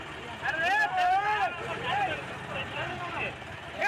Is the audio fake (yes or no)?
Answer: no